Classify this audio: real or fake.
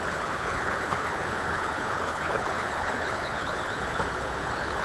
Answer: fake